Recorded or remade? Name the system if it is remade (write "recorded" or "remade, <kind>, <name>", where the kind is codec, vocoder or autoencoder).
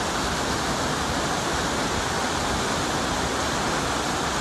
recorded